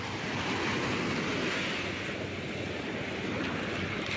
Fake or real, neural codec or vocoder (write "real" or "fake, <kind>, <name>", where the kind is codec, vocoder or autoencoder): real